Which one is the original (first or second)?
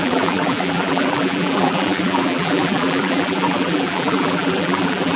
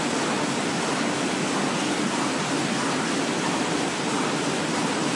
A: second